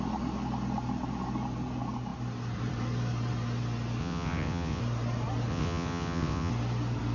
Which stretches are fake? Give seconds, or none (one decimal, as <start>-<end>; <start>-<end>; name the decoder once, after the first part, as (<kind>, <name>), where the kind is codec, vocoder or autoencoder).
4.0-4.8 (vocoder, WaveNeXt); 5.5-6.5